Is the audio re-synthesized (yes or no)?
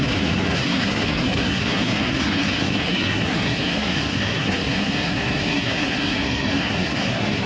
yes